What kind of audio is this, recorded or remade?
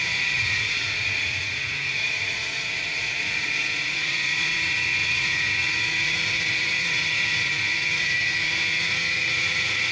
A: remade